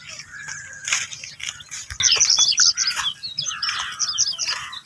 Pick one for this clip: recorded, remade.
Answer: recorded